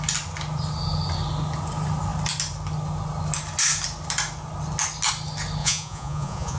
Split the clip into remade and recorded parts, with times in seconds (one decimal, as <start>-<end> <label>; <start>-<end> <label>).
0.0-5.6 recorded; 5.6-6.6 remade